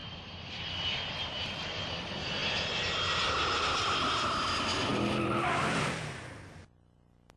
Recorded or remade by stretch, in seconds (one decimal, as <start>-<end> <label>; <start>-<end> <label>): 0.0-2.4 remade; 2.4-3.6 recorded; 3.6-4.9 remade; 4.9-5.7 recorded; 5.7-7.4 remade